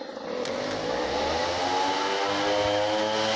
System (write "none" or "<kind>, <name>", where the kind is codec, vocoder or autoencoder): none